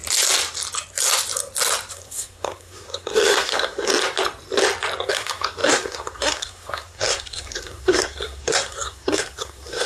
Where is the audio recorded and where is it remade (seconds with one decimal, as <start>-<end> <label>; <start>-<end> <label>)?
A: 0.0-1.9 recorded; 1.9-3.9 remade; 3.9-5.1 recorded; 5.1-9.9 remade